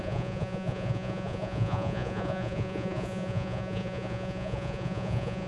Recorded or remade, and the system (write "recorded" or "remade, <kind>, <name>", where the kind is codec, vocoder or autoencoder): remade, vocoder, Vocos